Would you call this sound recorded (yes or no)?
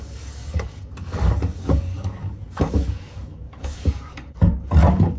no